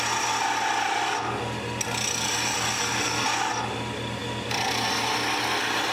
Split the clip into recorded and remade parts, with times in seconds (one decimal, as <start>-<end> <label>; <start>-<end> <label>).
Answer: 0.0-4.2 recorded; 4.2-4.9 remade; 4.9-5.9 recorded